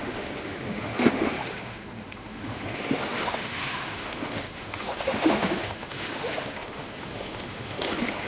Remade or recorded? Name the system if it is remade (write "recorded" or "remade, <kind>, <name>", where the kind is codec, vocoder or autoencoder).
remade, autoencoder, DAC-VAE